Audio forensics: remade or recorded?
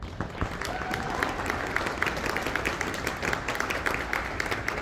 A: recorded